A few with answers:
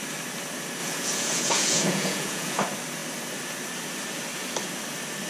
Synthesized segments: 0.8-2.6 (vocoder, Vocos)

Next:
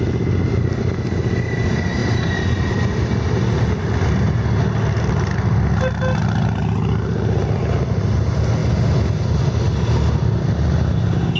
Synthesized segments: none

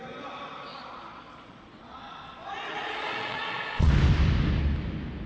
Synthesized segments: 0.7-3.9 (vocoder, Vocos)